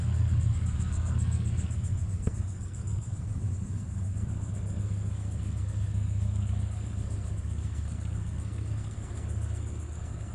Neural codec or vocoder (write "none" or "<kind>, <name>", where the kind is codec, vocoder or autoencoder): codec, SNAC